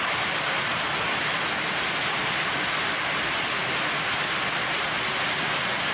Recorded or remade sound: recorded